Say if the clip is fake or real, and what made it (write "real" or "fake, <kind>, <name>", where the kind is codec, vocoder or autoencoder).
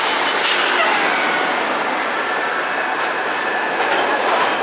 real